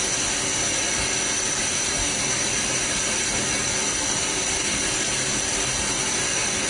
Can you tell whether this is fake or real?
real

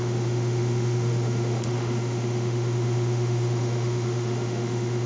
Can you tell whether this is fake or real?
fake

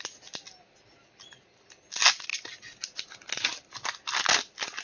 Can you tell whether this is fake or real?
real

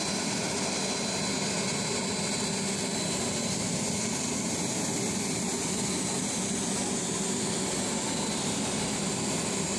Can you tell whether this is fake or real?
real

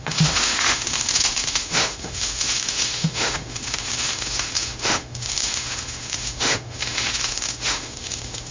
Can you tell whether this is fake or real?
fake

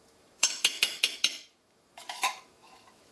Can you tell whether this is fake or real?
fake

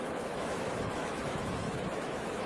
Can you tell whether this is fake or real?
fake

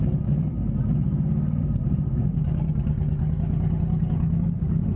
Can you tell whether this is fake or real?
real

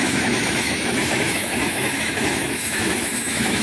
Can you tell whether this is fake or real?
fake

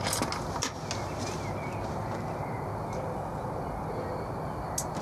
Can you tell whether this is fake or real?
real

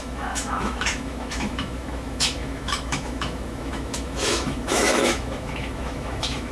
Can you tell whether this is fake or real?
fake